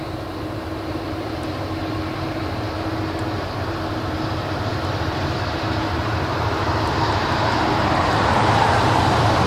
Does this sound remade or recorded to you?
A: remade